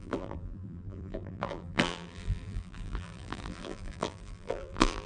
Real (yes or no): no